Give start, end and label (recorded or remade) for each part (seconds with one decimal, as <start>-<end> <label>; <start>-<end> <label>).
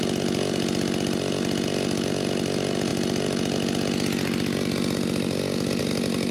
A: 0.0-6.3 recorded